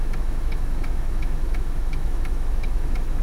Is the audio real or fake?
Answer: fake